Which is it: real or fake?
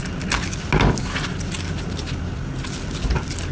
real